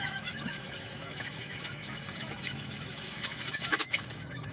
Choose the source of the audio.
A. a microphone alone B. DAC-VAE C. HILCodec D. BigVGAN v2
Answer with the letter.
B